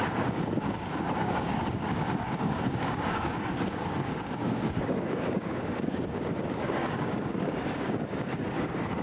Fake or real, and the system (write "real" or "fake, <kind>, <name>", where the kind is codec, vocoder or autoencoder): fake, codec, DAC